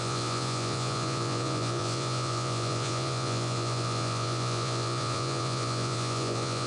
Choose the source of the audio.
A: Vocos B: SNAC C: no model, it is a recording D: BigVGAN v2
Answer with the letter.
A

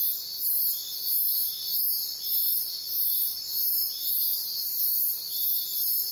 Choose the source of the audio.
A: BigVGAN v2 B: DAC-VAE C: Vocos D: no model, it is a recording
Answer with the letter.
A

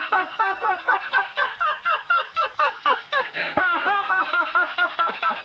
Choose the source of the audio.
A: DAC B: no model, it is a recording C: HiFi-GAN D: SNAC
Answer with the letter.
D